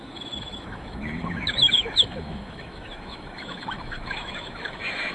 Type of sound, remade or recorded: remade